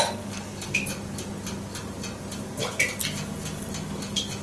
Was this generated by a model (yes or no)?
no